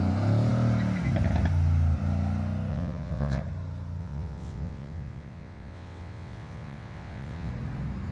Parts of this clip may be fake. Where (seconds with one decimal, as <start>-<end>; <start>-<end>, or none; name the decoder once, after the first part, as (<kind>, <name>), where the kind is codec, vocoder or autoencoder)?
2.7-3.4 (vocoder, WaveNeXt); 4.0-7.5